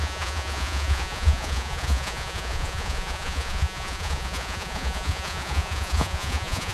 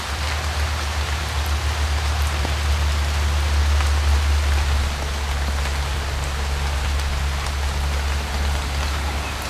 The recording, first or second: second